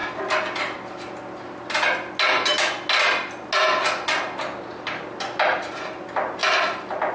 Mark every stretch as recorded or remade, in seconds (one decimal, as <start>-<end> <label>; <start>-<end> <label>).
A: 0.0-7.1 recorded